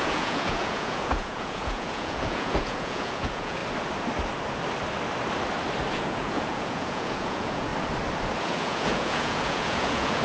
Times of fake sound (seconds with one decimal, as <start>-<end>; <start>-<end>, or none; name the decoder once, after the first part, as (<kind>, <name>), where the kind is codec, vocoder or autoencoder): 0.0-3.6 (vocoder, Vocos); 5.9-7.7; 8.4-10.2